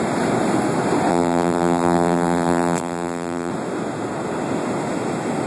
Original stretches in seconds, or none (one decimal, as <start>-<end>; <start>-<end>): 0.0-1.1; 3.5-5.5